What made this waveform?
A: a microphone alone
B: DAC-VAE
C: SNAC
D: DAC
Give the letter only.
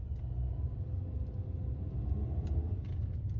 A